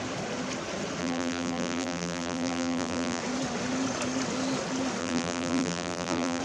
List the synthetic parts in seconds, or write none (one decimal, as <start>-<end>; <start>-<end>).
1.0-3.2; 5.0-6.4